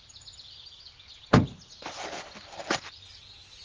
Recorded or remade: recorded